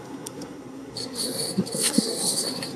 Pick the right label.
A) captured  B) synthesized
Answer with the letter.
B